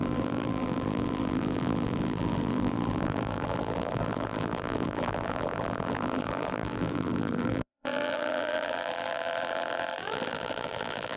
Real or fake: fake